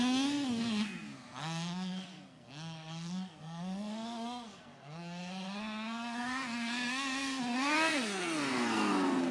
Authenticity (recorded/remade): remade